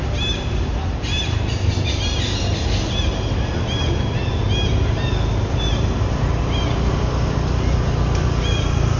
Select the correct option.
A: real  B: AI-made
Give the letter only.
A